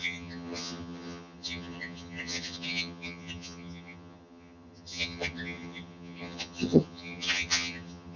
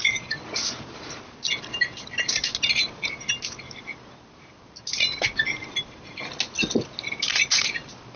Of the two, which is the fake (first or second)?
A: first